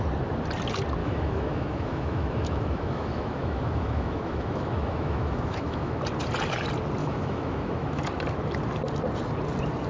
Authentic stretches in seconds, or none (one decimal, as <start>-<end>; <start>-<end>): 0.0-1.0; 5.9-7.0; 8.0-9.9